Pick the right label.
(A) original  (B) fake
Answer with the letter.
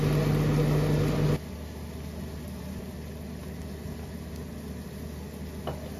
A